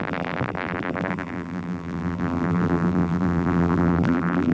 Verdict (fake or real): fake